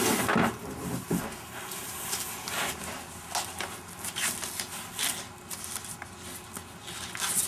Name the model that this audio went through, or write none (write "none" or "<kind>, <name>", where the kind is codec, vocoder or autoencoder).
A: none